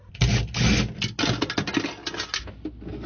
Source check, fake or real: real